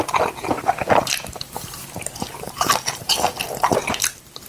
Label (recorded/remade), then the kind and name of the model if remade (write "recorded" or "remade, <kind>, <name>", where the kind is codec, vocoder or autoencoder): remade, vocoder, BigVGAN v2